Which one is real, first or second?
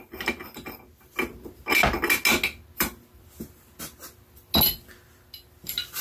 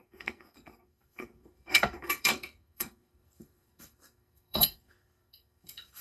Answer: first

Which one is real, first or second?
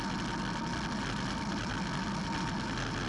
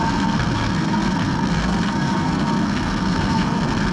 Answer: first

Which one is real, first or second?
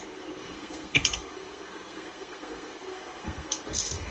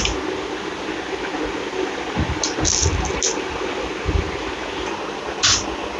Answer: second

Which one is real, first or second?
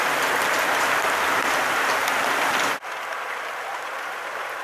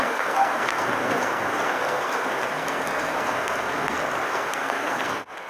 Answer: first